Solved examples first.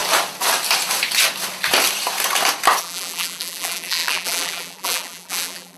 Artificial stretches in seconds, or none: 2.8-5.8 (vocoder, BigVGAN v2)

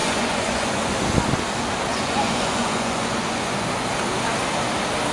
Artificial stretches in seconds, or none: 0.0-0.9 (vocoder, Vocos); 1.9-3.9